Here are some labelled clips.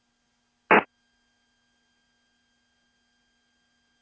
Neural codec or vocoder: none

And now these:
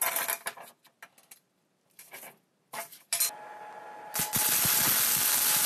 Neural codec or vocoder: none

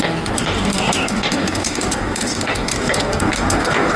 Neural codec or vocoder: codec, DAC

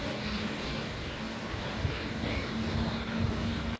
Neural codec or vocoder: codec, DAC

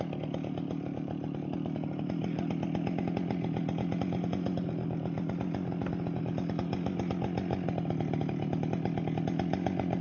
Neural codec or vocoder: none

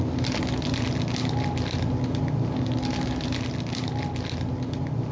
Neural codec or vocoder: none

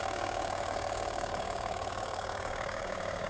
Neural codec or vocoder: codec, DAC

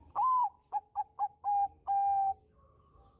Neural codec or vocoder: codec, DAC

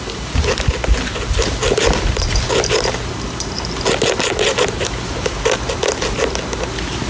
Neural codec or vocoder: none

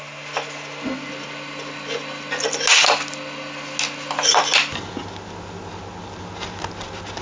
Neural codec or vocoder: none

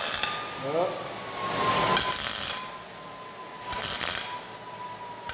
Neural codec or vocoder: none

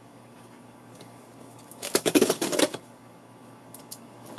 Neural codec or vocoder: codec, DAC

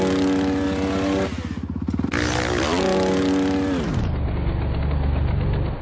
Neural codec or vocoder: none